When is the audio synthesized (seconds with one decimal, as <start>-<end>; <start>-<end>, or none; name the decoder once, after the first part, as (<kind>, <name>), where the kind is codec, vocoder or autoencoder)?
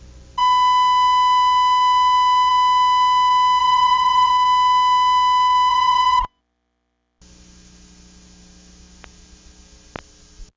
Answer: 3.6-4.3 (vocoder, Vocos); 5.7-6.4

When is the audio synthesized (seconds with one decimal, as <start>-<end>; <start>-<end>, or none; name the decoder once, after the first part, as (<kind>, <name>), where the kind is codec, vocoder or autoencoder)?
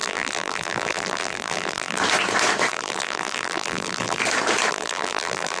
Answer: 0.0-2.0 (vocoder, BigVGAN v2); 2.7-4.2; 4.7-5.6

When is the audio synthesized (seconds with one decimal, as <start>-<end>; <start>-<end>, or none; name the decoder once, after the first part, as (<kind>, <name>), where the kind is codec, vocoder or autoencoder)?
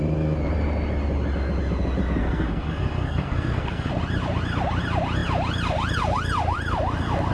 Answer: 2.2-3.9 (codec, SNAC)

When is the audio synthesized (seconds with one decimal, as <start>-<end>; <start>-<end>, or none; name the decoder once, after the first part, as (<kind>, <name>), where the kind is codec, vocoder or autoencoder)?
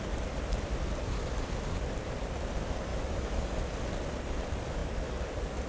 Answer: 2.9-3.6 (autoencoder, DAC-VAE)